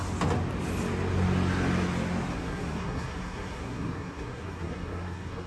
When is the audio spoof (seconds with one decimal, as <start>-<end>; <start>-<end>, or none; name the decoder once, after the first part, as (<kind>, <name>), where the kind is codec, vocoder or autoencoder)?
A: 2.3-5.5 (codec, SNAC)